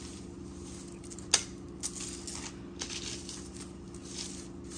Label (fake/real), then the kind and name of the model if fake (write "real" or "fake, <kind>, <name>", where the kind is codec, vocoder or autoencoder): real